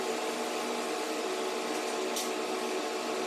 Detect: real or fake real